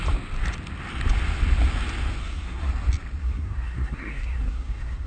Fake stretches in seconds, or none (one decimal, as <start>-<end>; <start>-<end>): 2.2-2.7; 3.2-5.1